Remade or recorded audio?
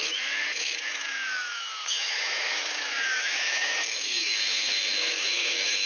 remade